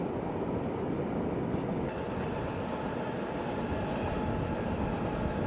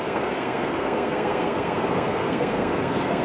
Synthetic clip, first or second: second